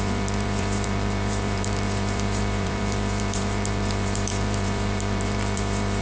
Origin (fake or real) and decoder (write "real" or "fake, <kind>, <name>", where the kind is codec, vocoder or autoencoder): fake, vocoder, BigVGAN v2